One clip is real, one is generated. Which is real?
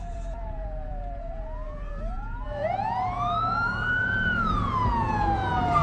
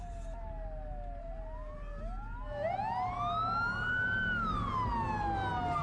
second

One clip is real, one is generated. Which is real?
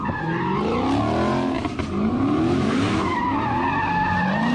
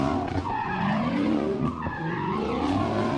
first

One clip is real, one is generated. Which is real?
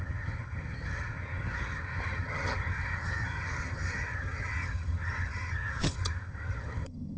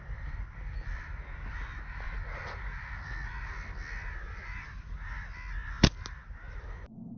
second